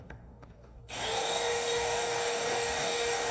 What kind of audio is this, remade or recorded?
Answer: remade